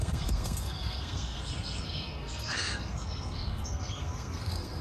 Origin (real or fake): fake